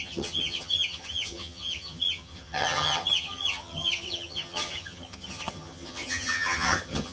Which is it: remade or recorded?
remade